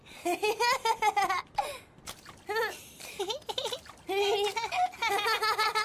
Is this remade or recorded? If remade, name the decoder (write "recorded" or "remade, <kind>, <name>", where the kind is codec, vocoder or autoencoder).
recorded